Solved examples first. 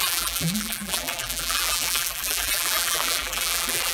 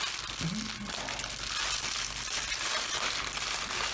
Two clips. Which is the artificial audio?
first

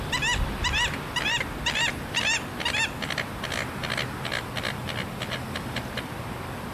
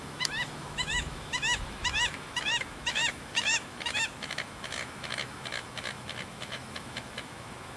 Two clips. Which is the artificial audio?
second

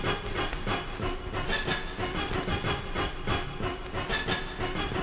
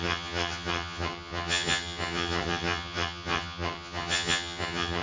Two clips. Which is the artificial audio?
second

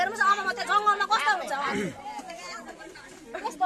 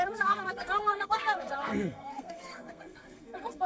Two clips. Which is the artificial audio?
second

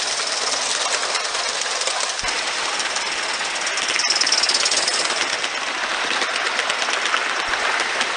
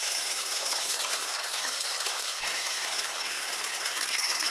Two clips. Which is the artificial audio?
second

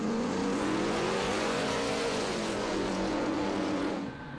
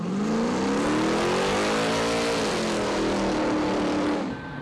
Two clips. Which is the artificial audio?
first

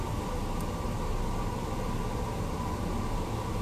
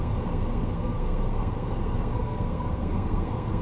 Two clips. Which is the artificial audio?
second